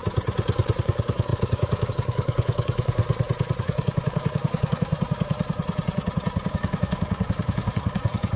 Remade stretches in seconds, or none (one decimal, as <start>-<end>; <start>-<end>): 0.8-3.0; 3.6-4.9; 6.5-8.4